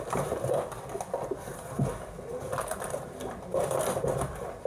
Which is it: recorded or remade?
recorded